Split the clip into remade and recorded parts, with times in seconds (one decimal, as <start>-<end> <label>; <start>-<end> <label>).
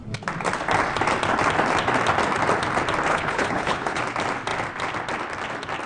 0.0-3.1 recorded; 3.1-4.0 remade; 4.0-5.9 recorded